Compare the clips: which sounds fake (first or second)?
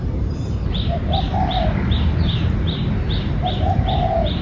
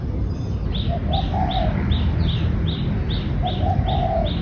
first